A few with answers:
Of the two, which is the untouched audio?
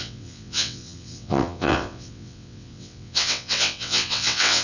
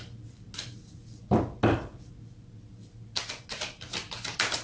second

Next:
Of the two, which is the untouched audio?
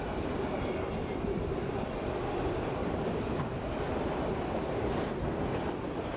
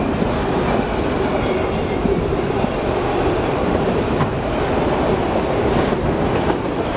second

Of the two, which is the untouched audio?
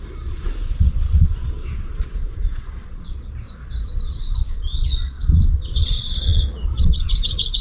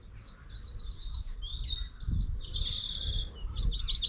second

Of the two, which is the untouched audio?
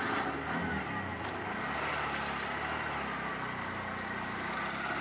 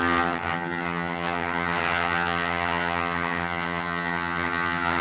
first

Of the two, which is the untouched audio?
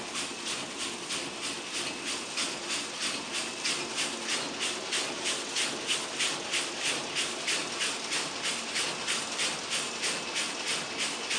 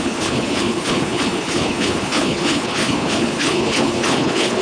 first